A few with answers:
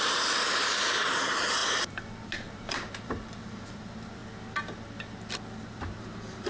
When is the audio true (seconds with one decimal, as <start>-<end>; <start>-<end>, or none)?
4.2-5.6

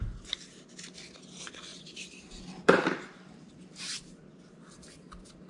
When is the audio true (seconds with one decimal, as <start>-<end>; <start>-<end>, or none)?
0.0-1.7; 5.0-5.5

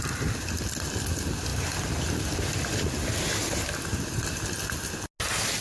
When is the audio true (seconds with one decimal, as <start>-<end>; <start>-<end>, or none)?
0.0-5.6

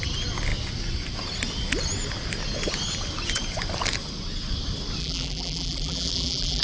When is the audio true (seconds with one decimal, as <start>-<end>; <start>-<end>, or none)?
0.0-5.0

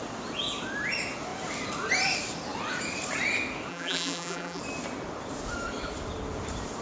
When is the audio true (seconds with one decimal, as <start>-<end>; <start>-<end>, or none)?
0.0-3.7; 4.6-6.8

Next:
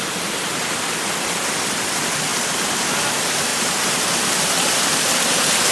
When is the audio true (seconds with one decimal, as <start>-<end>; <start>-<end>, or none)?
0.0-3.5; 5.3-5.7

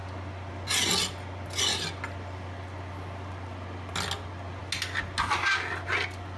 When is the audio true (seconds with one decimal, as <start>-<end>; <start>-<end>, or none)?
0.0-6.4